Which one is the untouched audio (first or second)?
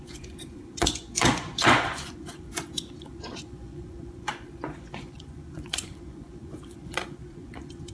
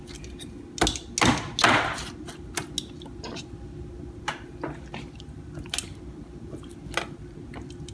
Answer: second